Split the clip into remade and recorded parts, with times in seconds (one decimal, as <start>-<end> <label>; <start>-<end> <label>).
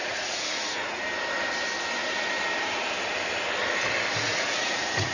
0.0-1.0 remade; 1.0-4.1 recorded; 4.1-5.1 remade